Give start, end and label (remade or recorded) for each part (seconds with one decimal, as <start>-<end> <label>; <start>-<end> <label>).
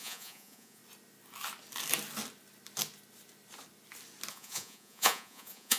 0.0-0.8 remade; 0.8-4.3 recorded; 4.3-5.8 remade